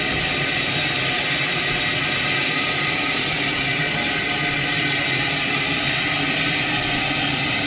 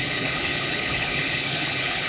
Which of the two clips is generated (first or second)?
second